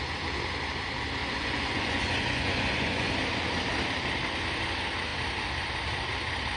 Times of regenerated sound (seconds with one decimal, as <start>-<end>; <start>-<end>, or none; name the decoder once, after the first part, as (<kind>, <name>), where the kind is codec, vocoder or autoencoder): 1.2-3.1 (vocoder, Vocos)